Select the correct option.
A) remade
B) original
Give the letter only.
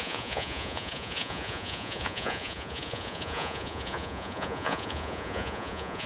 A